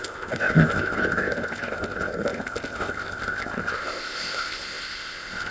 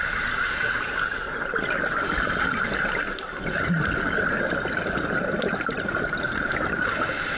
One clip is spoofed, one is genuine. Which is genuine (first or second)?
second